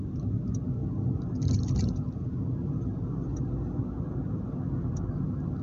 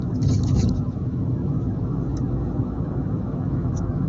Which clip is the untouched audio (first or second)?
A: first